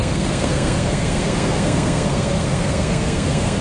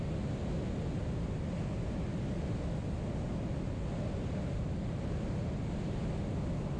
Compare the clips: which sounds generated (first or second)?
first